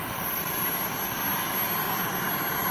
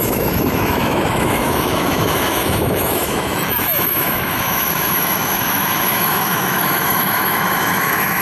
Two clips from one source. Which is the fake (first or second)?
second